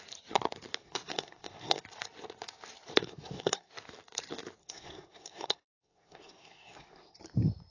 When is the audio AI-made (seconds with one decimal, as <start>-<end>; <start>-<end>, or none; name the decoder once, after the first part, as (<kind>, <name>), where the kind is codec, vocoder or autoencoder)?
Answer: 0.8-1.8 (codec, SNAC); 3.0-3.7; 4.6-7.2